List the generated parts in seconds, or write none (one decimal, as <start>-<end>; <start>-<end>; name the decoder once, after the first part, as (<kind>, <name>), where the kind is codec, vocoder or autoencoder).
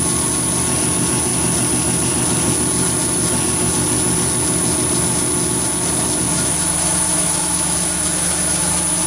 6.3-8.7 (autoencoder, DAC-VAE)